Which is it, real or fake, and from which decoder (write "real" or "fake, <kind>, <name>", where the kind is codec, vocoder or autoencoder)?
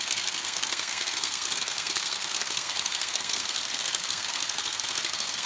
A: fake, codec, SNAC